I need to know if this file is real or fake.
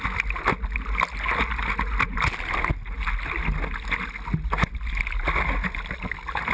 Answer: real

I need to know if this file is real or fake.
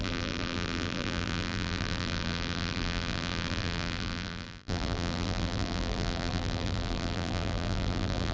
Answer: fake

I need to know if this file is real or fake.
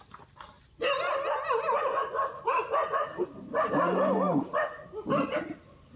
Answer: real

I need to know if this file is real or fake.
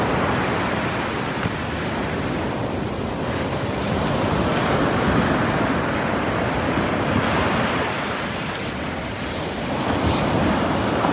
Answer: fake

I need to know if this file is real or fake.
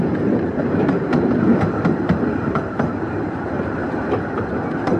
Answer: fake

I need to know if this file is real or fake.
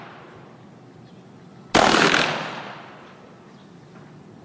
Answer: real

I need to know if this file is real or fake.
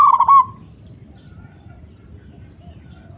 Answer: fake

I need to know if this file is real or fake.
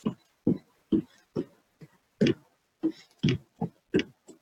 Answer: real